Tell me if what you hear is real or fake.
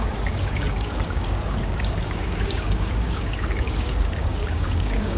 fake